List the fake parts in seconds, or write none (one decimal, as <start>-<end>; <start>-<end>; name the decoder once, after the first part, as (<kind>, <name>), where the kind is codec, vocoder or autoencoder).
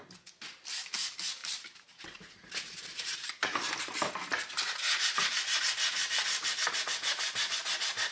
1.4-4.1 (vocoder, BigVGAN v2); 6.0-6.7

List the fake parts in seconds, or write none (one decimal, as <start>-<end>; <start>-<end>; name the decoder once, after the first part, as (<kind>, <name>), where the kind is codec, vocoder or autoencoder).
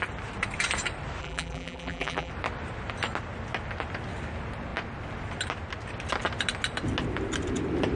1.2-2.3 (vocoder, BigVGAN v2)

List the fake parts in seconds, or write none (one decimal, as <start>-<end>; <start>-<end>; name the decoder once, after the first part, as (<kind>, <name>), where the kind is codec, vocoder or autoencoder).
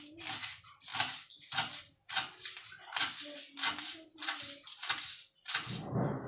none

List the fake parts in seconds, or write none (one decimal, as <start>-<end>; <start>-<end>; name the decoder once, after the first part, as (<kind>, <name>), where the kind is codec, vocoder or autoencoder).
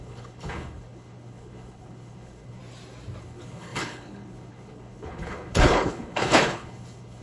0.0-2.6 (codec, HILCodec); 3.2-7.2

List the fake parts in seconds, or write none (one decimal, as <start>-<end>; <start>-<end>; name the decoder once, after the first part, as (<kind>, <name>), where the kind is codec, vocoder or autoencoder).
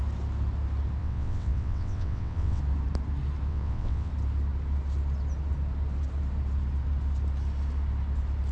1.0-2.6 (vocoder, WaveNeXt); 3.5-4.1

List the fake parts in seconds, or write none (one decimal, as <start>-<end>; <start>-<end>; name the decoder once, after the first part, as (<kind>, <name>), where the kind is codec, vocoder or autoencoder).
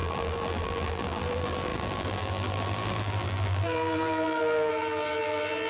0.0-5.7 (vocoder, BigVGAN v2)